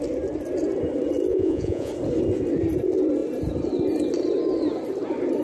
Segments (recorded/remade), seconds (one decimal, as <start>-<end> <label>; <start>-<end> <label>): 0.0-1.3 recorded; 1.3-1.9 remade; 1.9-5.4 recorded